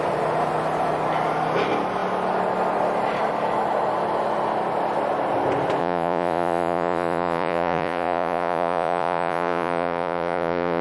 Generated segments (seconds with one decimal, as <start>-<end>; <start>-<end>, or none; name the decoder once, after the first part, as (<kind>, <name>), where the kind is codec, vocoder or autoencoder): 5.8-10.8 (vocoder, Vocos)